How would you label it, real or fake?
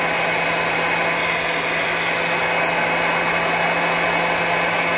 real